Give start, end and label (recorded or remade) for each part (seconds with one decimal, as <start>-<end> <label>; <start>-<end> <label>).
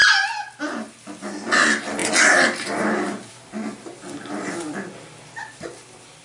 0.0-6.2 recorded